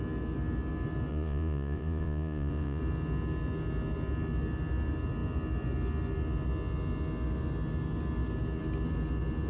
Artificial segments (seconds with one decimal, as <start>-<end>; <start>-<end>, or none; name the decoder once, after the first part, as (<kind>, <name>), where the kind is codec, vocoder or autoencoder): 1.1-2.8 (vocoder, Vocos)